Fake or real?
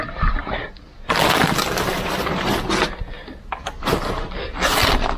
real